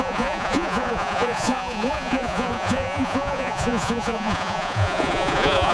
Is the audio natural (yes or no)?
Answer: no